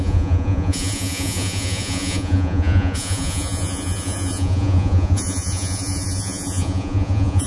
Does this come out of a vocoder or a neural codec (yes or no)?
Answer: yes